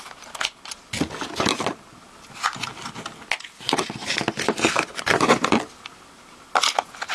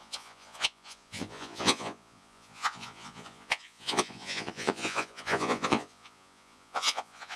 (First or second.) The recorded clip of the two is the first